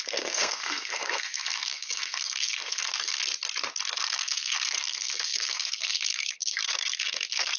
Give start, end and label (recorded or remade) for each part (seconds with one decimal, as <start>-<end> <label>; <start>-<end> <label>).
0.0-3.2 remade; 3.2-4.0 recorded; 4.0-7.6 remade